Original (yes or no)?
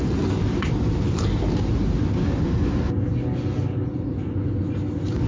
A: yes